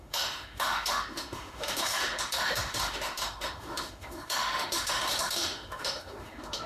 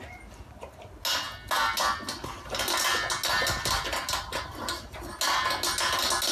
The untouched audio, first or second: second